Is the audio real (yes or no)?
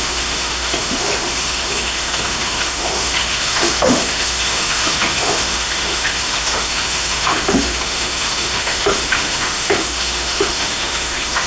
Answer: no